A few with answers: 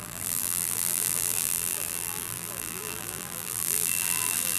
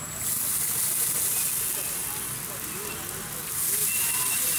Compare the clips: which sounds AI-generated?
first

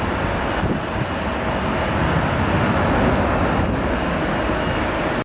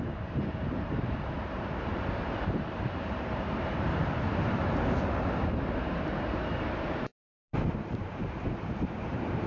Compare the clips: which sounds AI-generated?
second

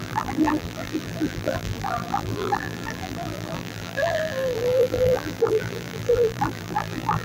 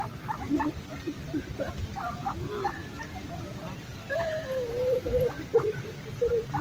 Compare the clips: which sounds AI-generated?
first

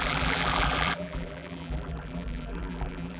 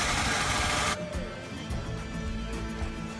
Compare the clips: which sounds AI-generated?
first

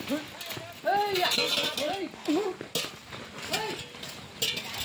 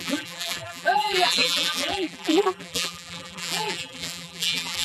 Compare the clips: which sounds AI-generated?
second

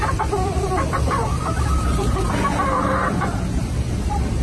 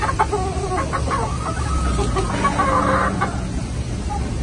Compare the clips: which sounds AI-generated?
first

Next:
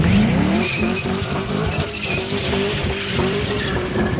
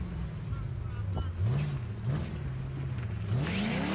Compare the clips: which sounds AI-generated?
first